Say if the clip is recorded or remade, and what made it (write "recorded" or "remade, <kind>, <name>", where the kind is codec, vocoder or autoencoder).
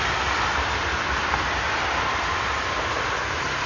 recorded